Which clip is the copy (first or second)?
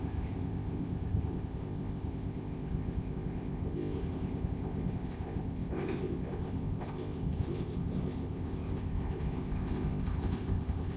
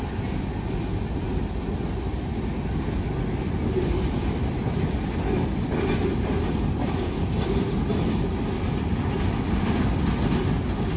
first